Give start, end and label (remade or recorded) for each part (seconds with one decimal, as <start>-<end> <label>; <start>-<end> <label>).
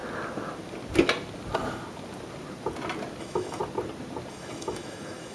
0.0-3.2 recorded; 3.2-3.6 remade; 3.6-4.3 recorded; 4.3-5.3 remade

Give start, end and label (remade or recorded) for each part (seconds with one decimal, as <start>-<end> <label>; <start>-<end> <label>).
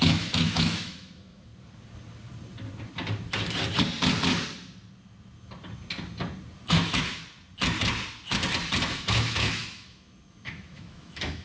0.0-1.5 remade; 1.5-6.7 recorded; 6.7-7.2 remade; 7.2-8.9 recorded; 8.9-11.4 remade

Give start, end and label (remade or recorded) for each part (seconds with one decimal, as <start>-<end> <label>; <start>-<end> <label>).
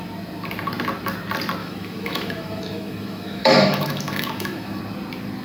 0.0-1.6 recorded; 1.6-4.8 remade; 4.8-5.4 recorded